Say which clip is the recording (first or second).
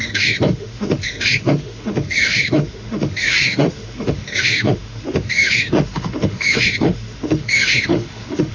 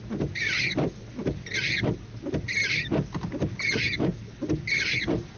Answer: second